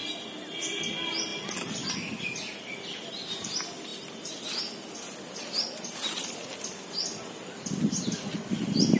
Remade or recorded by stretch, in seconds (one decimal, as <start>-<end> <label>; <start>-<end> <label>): 0.0-9.0 recorded